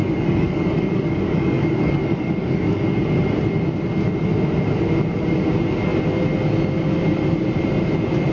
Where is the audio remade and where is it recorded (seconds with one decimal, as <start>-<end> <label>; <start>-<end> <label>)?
0.0-2.8 remade; 2.8-8.3 recorded